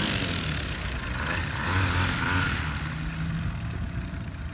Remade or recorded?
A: recorded